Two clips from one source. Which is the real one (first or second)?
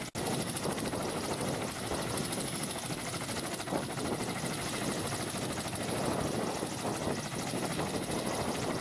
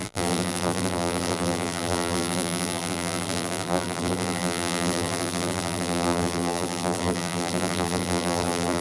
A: first